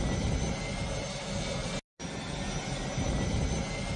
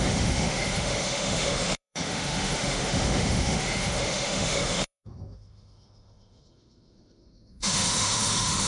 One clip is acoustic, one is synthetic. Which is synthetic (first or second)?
second